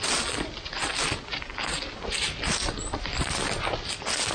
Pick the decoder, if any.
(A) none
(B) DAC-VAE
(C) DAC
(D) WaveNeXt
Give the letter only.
A